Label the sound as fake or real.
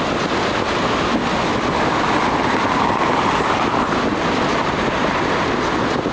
real